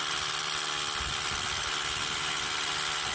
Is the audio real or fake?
real